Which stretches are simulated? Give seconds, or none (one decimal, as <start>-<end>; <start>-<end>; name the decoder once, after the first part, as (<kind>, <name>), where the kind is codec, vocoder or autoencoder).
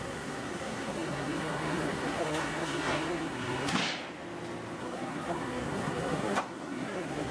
0.0-3.8 (codec, SNAC); 4.8-7.3